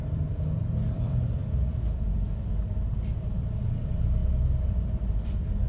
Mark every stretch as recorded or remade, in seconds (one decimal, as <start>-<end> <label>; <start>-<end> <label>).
0.0-4.2 remade; 4.2-4.7 recorded; 4.7-5.7 remade